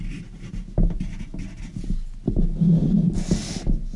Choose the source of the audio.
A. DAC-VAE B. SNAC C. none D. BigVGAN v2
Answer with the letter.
C